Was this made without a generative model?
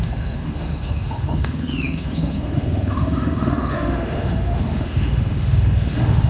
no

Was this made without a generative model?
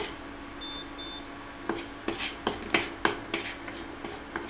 yes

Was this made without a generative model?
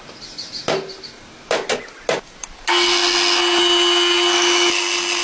yes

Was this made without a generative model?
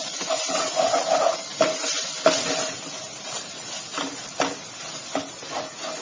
yes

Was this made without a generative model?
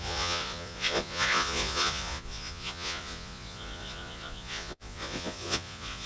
no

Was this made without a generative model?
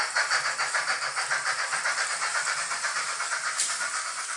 no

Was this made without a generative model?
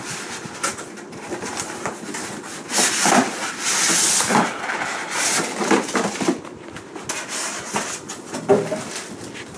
yes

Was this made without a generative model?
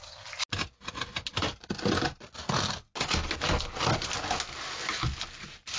yes